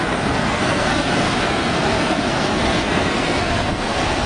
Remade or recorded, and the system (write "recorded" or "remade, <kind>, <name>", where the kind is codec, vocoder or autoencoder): remade, codec, SNAC